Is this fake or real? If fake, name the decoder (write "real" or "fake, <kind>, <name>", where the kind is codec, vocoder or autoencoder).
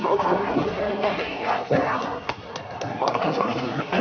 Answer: fake, codec, SNAC